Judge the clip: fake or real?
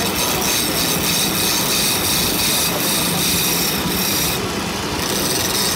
real